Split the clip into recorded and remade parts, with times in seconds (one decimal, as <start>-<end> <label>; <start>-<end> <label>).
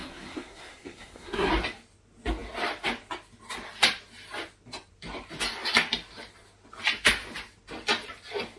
0.0-1.5 remade; 1.5-8.6 recorded